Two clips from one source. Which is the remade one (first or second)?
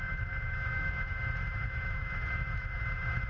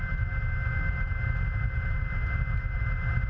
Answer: first